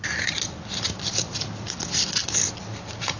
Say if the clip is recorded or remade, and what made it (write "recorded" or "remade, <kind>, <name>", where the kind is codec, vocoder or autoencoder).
recorded